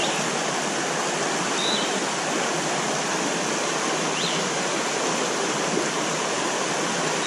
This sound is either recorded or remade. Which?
recorded